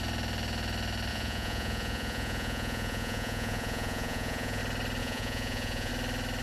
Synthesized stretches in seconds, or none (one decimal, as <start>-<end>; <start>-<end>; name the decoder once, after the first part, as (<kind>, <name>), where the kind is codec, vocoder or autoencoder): 1.1-4.6 (vocoder, Vocos); 5.0-5.9